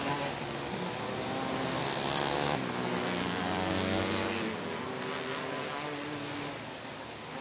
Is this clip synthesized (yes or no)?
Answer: no